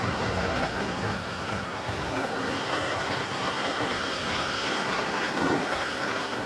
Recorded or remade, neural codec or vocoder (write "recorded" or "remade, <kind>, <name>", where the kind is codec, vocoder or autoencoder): remade, codec, SNAC